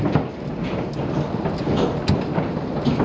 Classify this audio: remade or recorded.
recorded